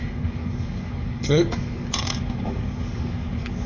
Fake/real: fake